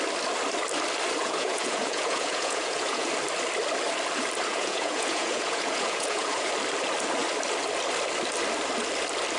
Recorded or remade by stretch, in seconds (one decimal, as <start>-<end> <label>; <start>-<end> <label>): 0.0-1.2 recorded; 1.2-3.1 remade; 3.1-4.5 recorded; 4.5-6.5 remade; 6.5-9.4 recorded